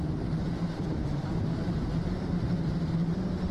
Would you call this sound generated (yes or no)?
yes